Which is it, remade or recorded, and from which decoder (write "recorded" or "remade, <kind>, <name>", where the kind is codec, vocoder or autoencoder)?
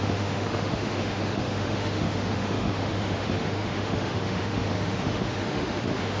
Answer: remade, autoencoder, DAC-VAE